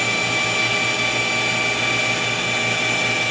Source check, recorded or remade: recorded